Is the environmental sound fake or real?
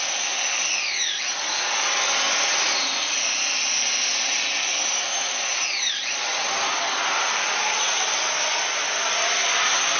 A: real